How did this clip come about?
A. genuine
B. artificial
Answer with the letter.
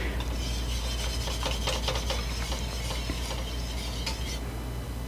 A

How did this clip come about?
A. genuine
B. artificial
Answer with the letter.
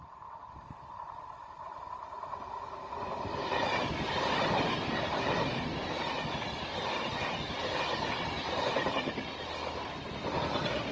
A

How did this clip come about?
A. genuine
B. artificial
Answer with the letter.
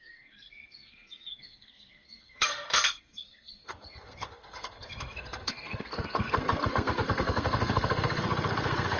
B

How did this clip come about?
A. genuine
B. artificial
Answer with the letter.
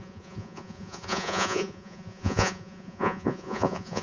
B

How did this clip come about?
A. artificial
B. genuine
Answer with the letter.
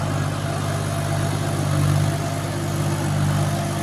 B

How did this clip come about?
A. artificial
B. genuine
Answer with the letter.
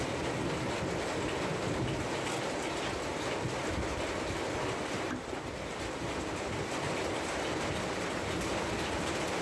B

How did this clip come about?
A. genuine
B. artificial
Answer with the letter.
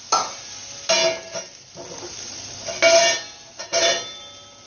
A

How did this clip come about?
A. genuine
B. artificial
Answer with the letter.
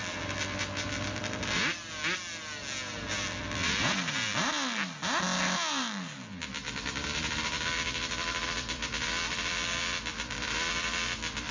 A